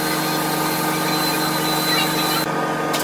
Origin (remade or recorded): recorded